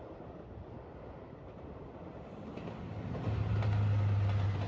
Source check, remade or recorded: recorded